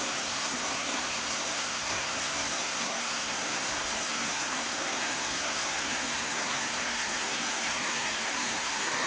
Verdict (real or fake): fake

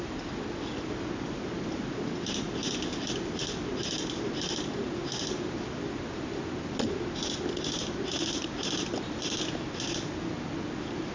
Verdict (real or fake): real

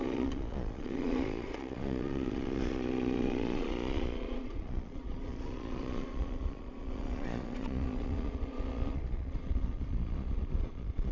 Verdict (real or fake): fake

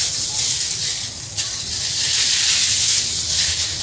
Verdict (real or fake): real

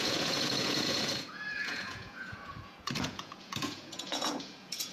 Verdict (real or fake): fake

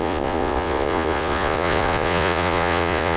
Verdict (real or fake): fake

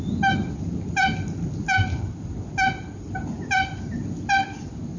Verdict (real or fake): real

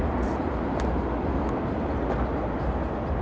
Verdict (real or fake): real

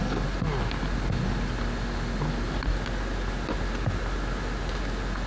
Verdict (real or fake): real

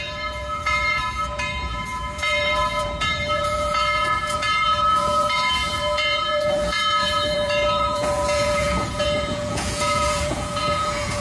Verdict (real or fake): fake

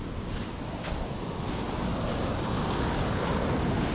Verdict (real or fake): real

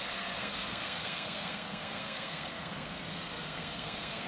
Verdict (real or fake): fake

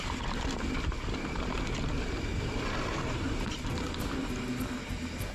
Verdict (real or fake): real